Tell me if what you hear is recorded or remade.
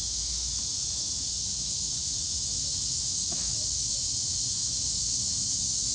remade